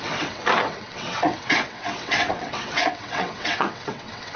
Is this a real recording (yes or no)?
no